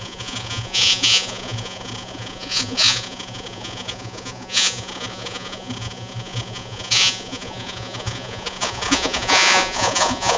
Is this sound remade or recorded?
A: remade